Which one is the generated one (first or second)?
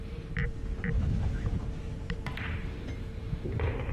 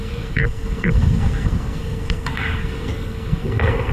second